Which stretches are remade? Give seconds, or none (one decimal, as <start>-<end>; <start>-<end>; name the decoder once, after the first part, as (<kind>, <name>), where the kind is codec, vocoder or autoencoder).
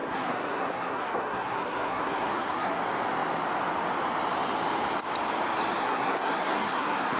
0.0-2.8 (codec, SNAC); 5.8-7.2